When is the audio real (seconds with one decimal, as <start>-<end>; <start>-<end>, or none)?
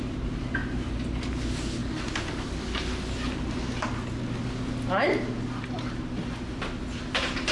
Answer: 0.0-7.5